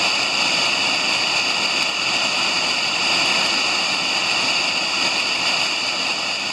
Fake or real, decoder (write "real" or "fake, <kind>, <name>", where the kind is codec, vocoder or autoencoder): real